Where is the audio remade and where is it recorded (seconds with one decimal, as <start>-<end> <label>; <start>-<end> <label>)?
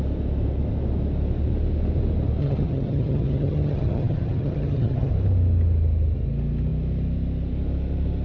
0.0-2.4 recorded; 2.4-5.1 remade; 5.1-8.2 recorded